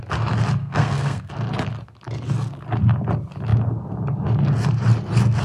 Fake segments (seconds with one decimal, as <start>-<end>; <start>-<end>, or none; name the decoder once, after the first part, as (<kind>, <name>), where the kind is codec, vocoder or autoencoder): 0.6-1.3 (codec, SNAC)